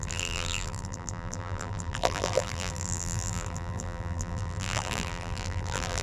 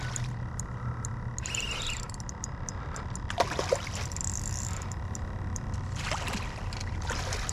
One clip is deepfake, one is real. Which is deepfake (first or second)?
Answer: first